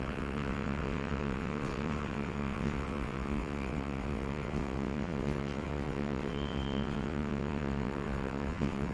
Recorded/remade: remade